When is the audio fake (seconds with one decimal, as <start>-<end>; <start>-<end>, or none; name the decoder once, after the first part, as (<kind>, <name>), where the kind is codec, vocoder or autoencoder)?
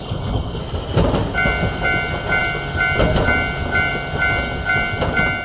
0.0-0.6 (codec, HILCodec)